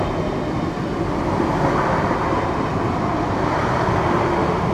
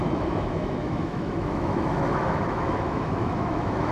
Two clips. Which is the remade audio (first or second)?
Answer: second